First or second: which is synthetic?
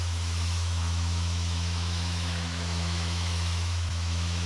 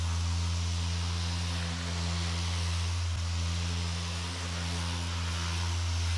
first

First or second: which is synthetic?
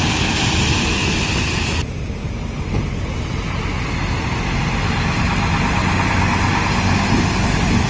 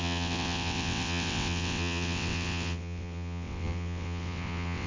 second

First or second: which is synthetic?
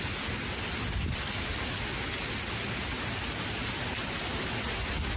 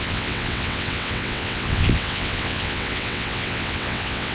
second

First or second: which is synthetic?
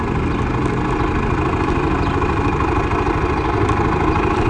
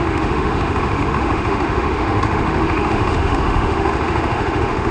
second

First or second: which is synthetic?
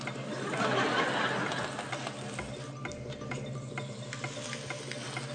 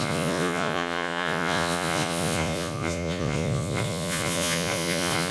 second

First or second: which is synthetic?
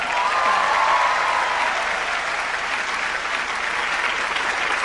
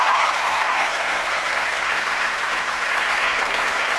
second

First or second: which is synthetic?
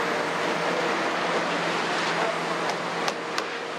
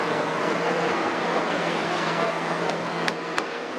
second